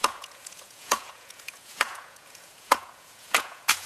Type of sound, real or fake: fake